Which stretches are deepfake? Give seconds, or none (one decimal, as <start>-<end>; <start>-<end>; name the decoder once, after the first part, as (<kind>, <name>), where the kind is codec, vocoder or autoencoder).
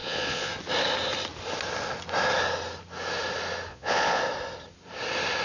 0.0-0.5 (vocoder, Vocos); 3.7-4.2